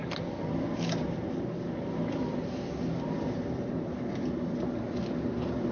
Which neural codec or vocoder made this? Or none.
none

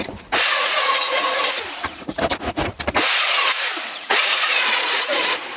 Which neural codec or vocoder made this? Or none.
vocoder, Vocos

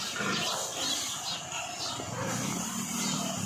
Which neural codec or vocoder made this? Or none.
none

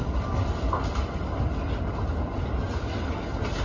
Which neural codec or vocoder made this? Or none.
none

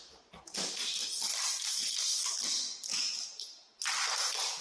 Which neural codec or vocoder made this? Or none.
none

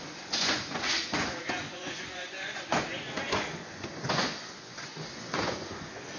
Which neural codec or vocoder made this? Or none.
vocoder, Vocos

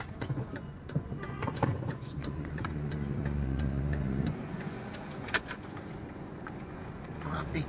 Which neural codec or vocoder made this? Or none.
vocoder, Vocos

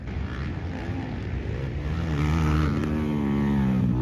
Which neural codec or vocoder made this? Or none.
none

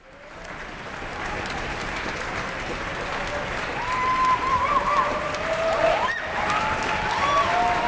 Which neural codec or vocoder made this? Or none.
none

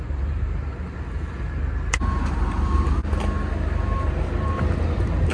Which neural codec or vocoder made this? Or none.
none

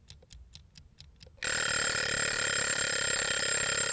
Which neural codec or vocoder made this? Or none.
none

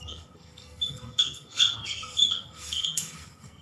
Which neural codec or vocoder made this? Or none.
codec, SNAC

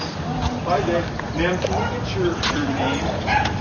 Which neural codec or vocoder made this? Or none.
vocoder, BigVGAN v2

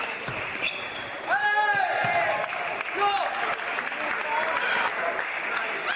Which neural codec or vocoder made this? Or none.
none